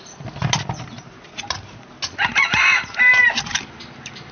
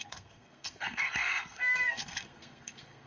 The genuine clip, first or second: first